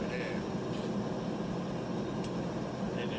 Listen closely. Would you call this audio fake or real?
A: real